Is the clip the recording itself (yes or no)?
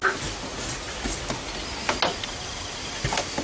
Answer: yes